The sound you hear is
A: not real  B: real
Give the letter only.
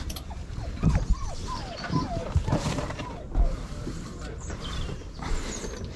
A